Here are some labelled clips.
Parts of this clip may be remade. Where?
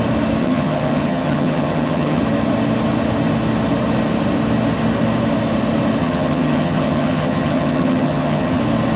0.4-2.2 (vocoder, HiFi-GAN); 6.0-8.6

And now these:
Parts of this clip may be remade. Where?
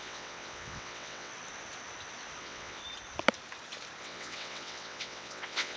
0.0-1.3 (vocoder, WaveNeXt); 2.4-2.8; 4.0-5.8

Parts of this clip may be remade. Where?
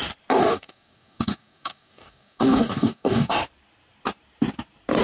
0.4-3.4 (codec, DAC)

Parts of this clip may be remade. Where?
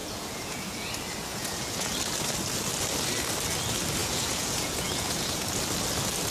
0.0-0.9 (vocoder, Vocos); 1.3-1.9; 4.0-5.4